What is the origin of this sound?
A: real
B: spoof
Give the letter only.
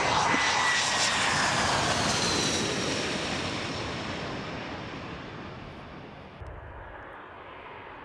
A